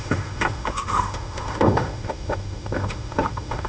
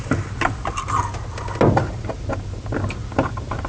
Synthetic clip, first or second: first